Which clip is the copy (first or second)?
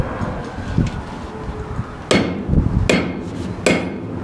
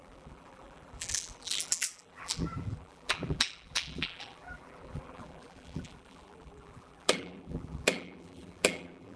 second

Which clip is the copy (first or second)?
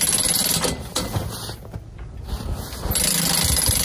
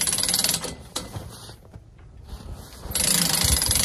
second